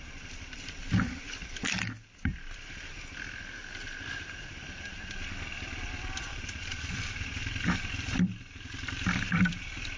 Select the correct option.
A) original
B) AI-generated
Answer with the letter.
B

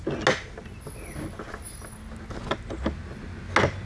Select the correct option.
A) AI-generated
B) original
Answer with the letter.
B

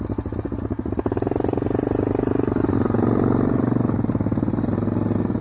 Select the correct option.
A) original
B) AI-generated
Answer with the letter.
A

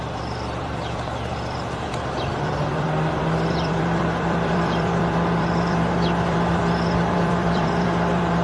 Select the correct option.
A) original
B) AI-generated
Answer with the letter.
B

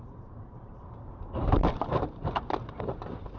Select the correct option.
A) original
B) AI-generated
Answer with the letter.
B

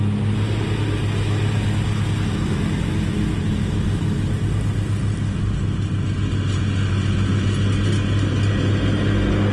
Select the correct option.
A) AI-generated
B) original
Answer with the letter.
B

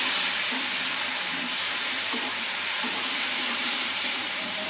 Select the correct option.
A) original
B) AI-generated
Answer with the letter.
B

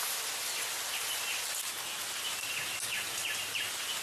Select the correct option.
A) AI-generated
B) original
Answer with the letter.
B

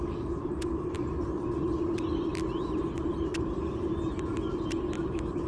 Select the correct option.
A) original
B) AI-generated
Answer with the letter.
B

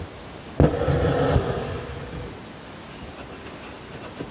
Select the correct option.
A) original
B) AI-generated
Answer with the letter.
A